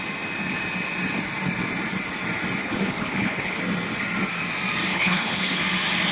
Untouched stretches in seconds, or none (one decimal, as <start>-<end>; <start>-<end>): 0.0-2.6; 3.6-4.9; 5.6-6.1